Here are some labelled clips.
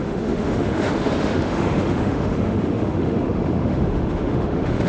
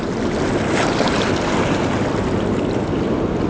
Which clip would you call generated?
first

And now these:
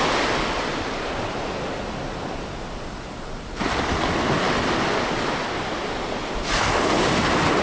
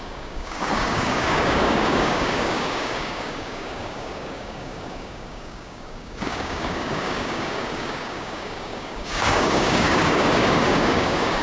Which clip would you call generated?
second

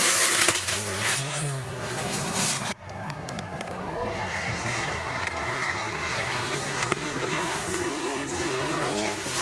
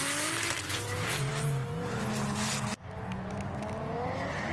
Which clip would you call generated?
first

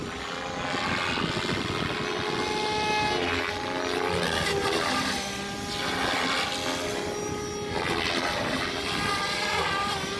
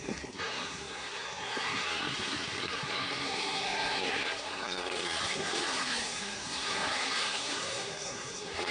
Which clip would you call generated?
second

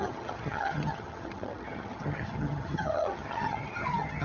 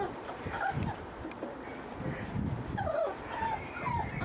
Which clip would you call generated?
first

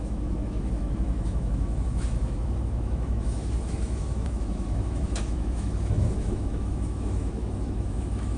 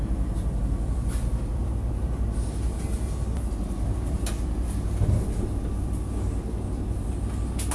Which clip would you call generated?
first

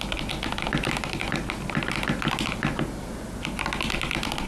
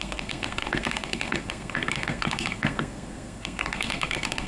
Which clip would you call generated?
second